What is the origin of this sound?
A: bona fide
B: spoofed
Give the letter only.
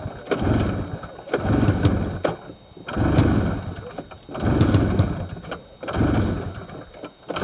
A